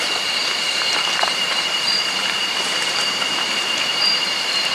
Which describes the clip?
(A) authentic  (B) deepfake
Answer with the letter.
B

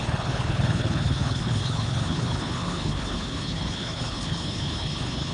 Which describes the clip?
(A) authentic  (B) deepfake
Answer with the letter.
B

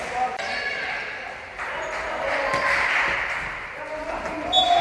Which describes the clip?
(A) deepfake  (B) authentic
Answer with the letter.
B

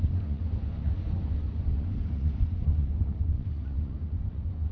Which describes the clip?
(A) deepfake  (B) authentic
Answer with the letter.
A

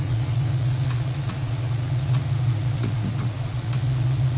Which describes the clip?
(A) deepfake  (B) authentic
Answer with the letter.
A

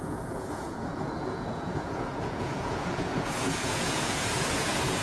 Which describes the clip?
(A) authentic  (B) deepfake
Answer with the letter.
B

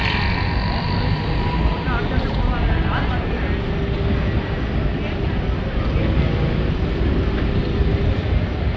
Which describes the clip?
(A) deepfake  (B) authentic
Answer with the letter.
B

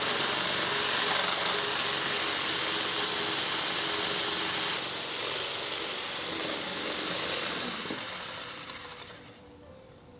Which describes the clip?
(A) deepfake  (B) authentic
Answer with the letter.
B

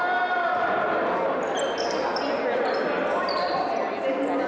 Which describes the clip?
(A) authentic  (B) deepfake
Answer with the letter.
A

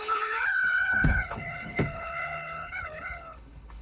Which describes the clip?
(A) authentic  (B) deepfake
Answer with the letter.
B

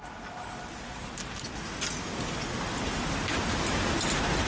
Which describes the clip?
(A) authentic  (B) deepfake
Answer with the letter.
A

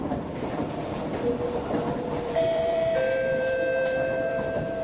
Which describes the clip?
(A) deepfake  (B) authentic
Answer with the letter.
A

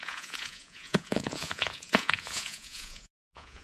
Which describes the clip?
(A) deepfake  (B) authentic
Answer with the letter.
A